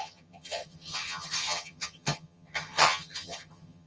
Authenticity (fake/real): fake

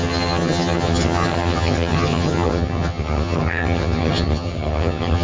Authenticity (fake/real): fake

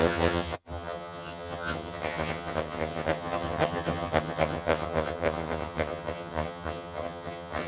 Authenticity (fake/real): fake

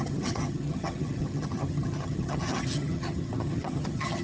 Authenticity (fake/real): fake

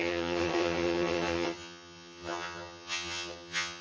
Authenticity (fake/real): fake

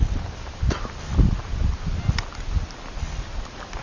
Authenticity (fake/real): real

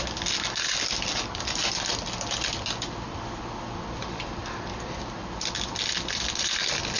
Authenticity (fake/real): real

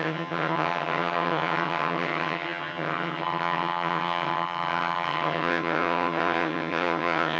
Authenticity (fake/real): fake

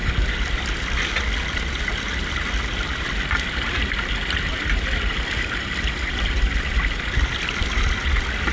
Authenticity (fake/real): real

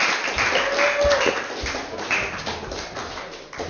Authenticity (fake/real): real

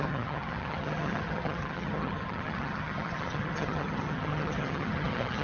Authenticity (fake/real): fake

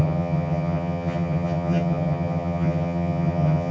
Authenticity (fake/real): fake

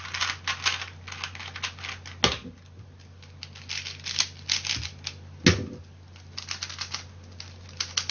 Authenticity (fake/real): real